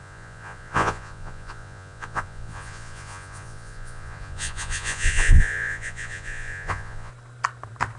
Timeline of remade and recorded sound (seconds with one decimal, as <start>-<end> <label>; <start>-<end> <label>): 0.0-7.1 remade; 7.1-8.0 recorded